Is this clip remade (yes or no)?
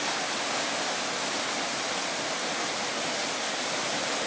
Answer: no